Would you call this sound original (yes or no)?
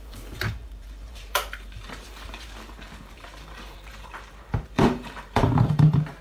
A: no